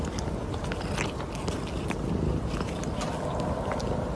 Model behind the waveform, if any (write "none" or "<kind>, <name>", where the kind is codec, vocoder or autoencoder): none